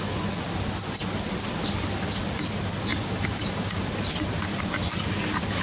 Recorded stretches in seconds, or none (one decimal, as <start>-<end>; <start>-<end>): 0.0-2.9; 4.6-5.6

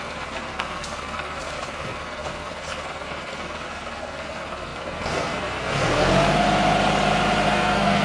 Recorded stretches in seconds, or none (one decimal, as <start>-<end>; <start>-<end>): 6.1-7.5